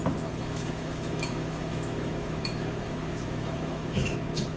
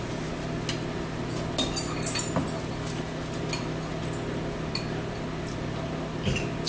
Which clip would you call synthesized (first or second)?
first